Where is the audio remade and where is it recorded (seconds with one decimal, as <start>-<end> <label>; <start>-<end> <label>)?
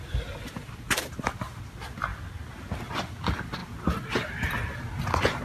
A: 0.0-5.4 recorded